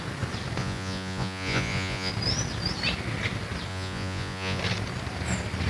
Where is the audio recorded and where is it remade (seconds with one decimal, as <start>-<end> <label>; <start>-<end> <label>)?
0.0-0.6 recorded; 0.6-2.1 remade; 2.1-3.7 recorded; 3.7-4.6 remade; 4.6-5.7 recorded